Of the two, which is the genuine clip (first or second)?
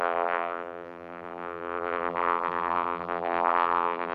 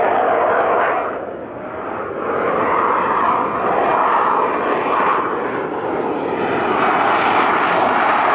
second